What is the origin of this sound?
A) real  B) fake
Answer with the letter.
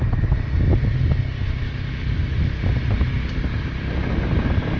A